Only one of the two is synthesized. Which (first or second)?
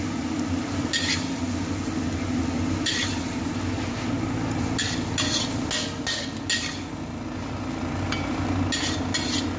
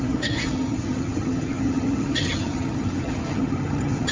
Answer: second